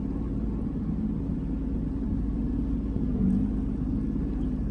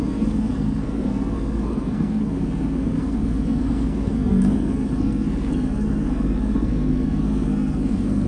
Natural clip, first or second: first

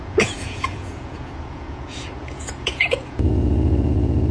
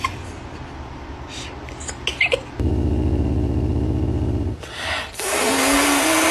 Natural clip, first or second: second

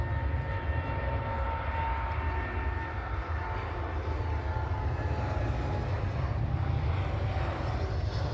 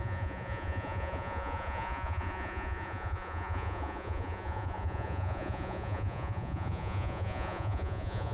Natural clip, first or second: first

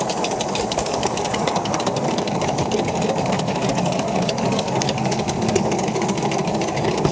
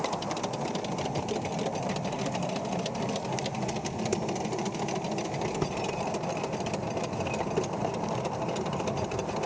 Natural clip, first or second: second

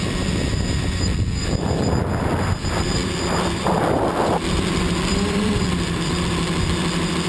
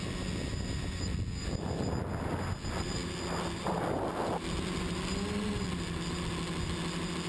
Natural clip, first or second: second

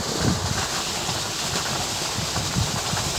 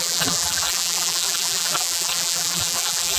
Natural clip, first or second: first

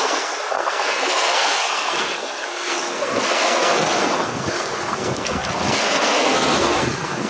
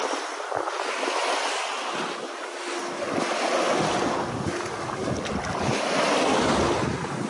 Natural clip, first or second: second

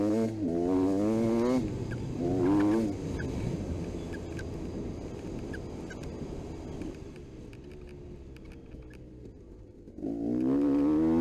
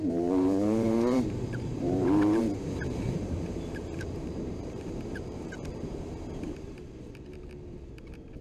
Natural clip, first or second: first